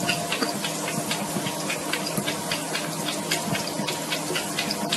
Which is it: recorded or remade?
recorded